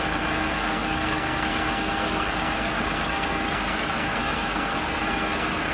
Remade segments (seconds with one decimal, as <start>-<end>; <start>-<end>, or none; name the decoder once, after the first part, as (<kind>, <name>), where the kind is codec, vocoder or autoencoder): 0.0-5.7 (codec, SNAC)